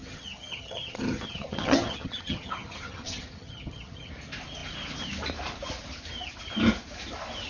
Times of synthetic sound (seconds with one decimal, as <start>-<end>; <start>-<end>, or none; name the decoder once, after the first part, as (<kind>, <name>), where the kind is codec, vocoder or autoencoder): 0.0-4.1 (vocoder, HiFi-GAN)